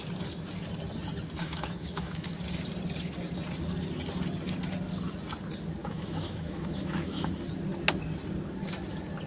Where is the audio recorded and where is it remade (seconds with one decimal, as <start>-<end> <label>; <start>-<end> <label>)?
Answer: 0.0-1.4 recorded; 1.4-2.3 remade; 2.3-5.8 recorded; 5.8-7.3 remade; 7.3-9.3 recorded